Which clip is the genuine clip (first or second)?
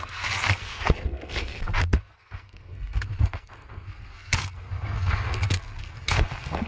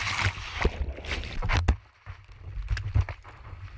second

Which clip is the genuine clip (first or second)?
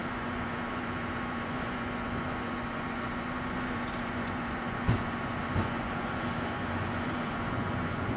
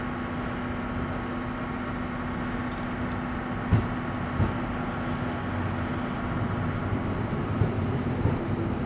second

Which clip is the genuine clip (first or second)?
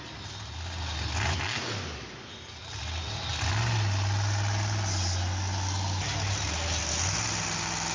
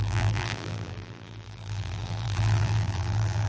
first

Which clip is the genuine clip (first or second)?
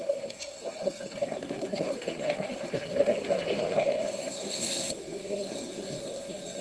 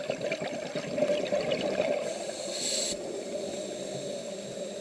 second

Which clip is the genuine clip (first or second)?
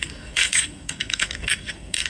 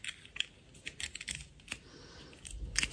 second